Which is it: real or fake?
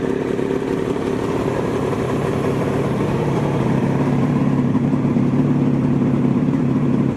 fake